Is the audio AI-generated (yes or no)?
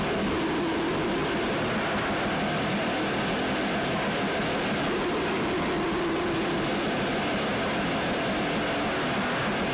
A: no